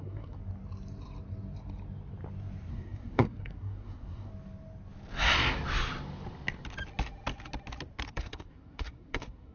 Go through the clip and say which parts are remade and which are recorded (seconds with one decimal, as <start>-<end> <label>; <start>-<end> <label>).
0.0-0.4 remade; 0.4-2.7 recorded; 2.7-4.3 remade; 4.3-8.1 recorded; 8.1-9.5 remade